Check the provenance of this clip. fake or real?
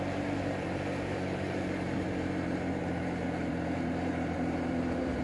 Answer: fake